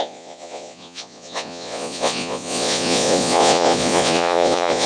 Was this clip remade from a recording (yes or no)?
yes